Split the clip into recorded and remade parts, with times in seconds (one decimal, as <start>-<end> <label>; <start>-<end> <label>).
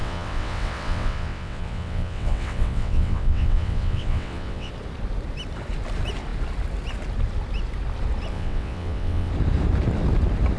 0.0-4.7 remade; 4.7-8.3 recorded; 8.3-9.3 remade; 9.3-10.6 recorded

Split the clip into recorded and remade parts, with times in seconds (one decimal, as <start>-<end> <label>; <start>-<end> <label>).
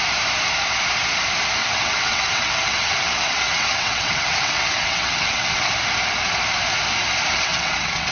0.0-1.6 recorded; 1.6-5.7 remade; 5.7-7.3 recorded; 7.3-8.1 remade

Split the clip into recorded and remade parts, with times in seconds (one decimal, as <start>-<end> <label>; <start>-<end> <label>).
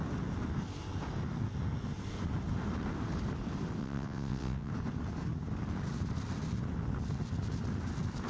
0.0-3.8 recorded; 3.8-4.7 remade; 4.7-8.3 recorded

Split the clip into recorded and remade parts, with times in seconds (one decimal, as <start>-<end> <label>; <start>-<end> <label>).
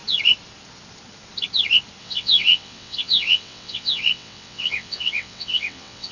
0.0-2.0 recorded; 2.0-6.1 remade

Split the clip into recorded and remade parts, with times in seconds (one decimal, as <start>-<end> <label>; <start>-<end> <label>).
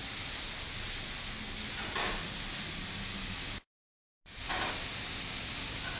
0.0-6.0 recorded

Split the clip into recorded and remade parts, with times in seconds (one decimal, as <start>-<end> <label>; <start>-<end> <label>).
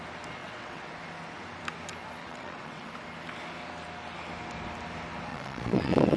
0.0-0.4 recorded; 0.4-0.9 remade; 0.9-2.2 recorded; 2.2-2.9 remade; 2.9-5.3 recorded; 5.3-6.2 remade